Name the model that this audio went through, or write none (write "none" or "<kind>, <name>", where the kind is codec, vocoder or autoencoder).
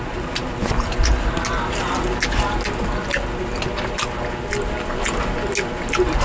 none